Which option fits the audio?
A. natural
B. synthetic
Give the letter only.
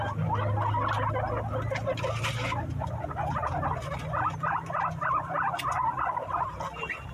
A